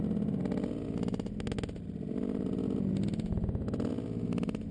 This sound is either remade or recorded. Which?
recorded